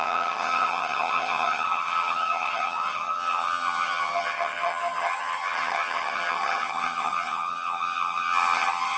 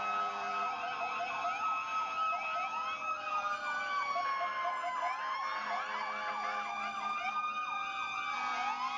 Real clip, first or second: second